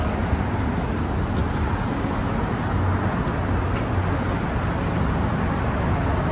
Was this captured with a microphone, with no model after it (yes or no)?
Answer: yes